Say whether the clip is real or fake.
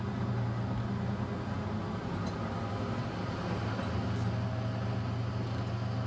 real